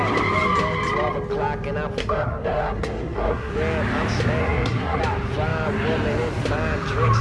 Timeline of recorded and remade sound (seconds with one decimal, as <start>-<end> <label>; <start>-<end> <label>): 0.0-2.0 recorded; 2.0-3.5 remade; 3.5-4.4 recorded; 4.4-5.0 remade; 5.0-7.2 recorded